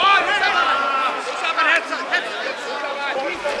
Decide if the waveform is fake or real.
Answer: real